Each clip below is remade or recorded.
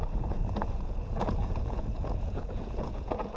remade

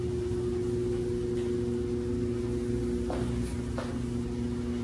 recorded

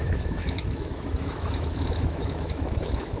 remade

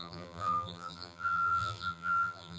remade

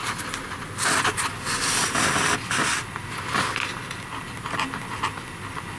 recorded